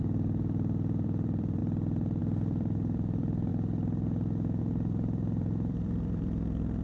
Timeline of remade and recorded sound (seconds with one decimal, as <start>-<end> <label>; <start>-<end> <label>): 0.0-1.6 remade; 1.6-2.2 recorded; 2.2-3.5 remade; 3.5-4.6 recorded; 4.6-6.8 remade